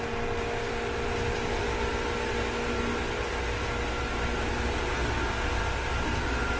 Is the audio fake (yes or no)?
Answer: no